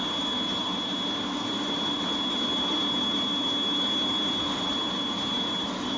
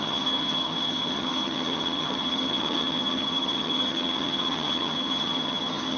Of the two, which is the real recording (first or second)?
first